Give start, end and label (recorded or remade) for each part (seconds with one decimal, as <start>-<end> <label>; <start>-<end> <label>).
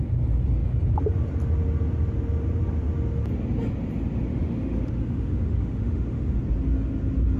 0.0-4.3 recorded; 4.3-6.4 remade; 6.4-7.4 recorded